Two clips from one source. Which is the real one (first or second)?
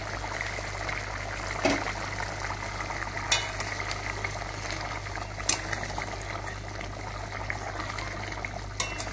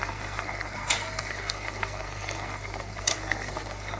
first